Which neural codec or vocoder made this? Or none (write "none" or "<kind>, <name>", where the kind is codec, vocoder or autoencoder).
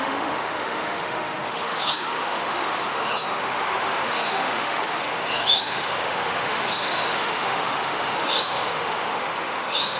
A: autoencoder, DAC-VAE